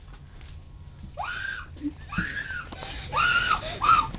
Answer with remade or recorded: recorded